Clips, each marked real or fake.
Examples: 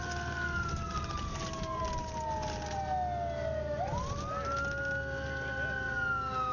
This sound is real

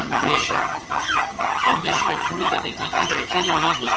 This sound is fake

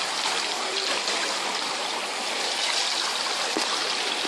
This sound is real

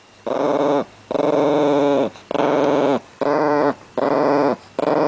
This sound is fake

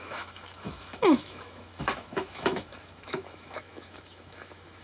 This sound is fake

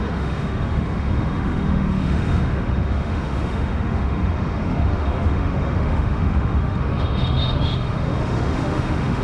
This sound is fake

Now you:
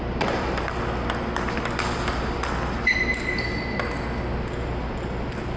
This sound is real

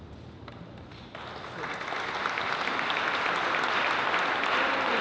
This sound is real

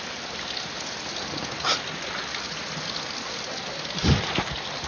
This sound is real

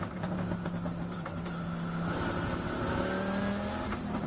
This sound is real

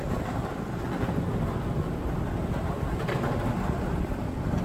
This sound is real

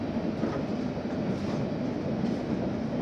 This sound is real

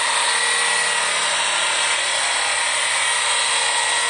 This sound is real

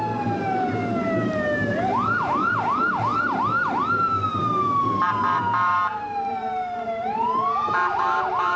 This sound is fake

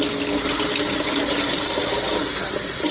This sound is real